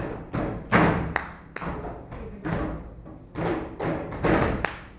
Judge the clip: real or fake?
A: real